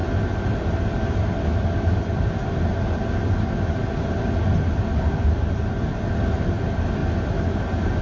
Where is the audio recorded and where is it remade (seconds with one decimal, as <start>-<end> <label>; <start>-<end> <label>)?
0.0-8.0 recorded